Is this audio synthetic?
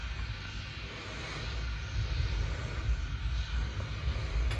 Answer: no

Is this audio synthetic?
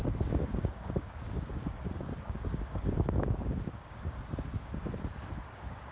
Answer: yes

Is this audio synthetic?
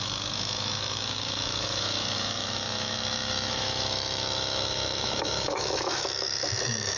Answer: yes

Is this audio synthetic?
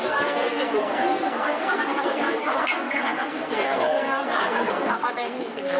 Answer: yes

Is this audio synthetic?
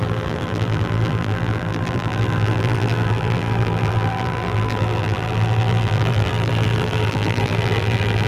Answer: yes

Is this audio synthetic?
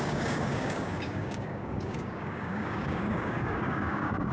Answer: yes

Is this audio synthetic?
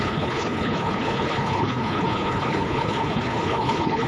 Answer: yes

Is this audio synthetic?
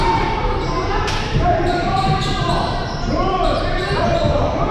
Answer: yes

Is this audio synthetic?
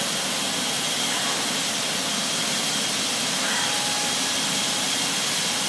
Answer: no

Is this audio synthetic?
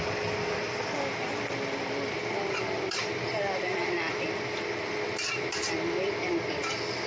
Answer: yes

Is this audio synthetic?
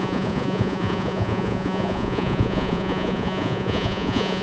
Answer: yes